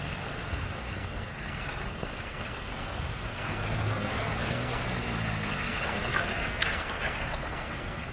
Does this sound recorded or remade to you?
remade